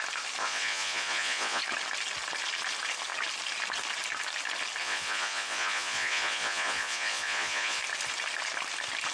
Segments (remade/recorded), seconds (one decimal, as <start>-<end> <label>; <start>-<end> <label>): 0.0-0.4 recorded; 0.4-1.6 remade; 1.6-4.8 recorded; 4.8-7.8 remade; 7.8-9.1 recorded